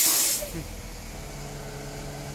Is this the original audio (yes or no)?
yes